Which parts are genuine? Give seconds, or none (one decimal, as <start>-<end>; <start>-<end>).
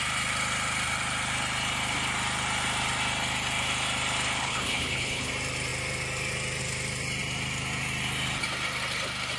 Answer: 0.0-4.4; 5.3-9.4